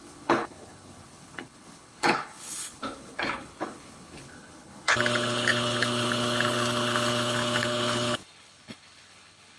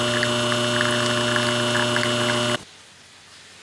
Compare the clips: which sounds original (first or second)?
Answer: second